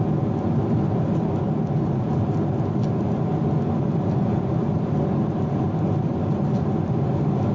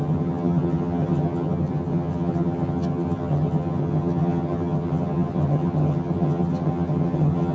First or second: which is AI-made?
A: second